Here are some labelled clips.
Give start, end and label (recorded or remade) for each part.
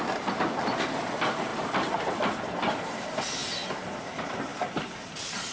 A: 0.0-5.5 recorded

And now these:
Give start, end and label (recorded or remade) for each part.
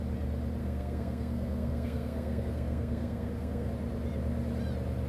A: 0.0-0.6 recorded; 0.6-3.7 remade; 3.7-5.1 recorded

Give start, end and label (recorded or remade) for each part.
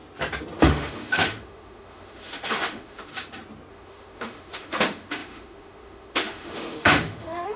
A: 0.0-0.6 recorded; 0.6-3.1 remade; 3.1-3.7 recorded; 3.7-7.6 remade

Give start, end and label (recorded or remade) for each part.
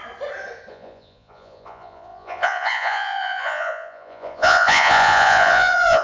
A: 0.0-0.7 recorded; 0.7-6.0 remade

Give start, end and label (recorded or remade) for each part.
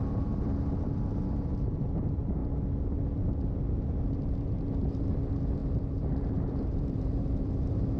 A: 0.0-2.4 remade; 2.4-3.7 recorded; 3.7-8.0 remade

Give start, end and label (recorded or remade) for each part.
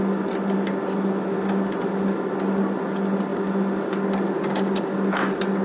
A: 0.0-5.6 recorded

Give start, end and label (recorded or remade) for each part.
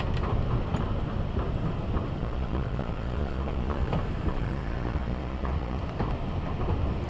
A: 0.0-2.2 recorded; 2.2-3.9 remade; 3.9-4.3 recorded; 4.3-5.8 remade; 5.8-7.1 recorded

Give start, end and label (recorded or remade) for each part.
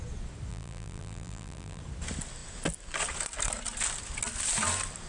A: 0.0-0.5 recorded; 0.5-1.8 remade; 1.8-5.1 recorded